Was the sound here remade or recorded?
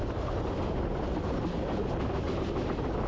recorded